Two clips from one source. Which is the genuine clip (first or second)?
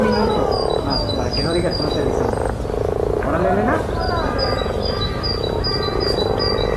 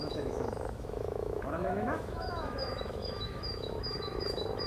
first